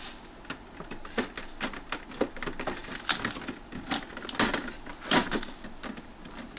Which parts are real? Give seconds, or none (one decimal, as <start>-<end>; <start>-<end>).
0.0-6.6